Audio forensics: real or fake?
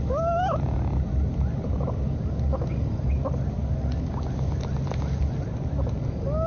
real